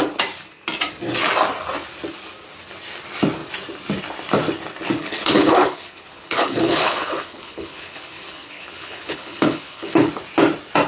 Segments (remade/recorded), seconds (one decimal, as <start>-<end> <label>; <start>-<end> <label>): 0.0-5.0 recorded; 5.0-10.1 remade; 10.1-10.9 recorded